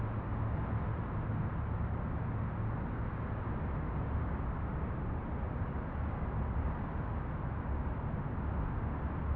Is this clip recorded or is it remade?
recorded